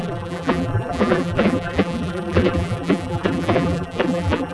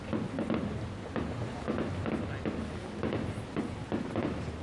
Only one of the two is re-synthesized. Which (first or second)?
first